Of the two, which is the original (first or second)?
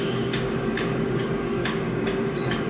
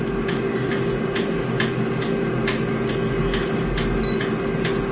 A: second